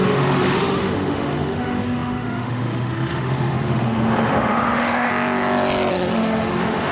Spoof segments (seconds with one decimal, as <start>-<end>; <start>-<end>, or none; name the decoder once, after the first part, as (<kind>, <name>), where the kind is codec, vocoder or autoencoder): 0.0-5.1 (autoencoder, DAC-VAE); 5.9-6.9